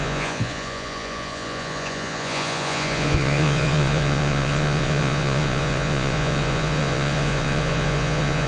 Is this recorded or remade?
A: remade